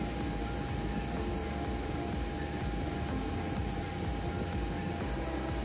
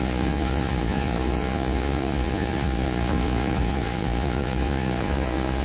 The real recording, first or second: first